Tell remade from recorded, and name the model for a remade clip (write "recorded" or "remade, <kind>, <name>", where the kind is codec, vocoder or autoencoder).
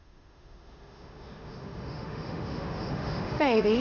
remade, autoencoder, DAC-VAE